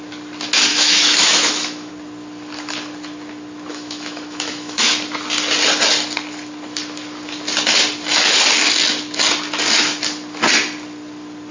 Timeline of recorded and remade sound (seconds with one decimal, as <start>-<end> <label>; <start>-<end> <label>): 0.0-0.7 recorded; 0.7-1.9 remade; 1.9-3.7 recorded; 3.7-4.9 remade; 4.9-11.5 recorded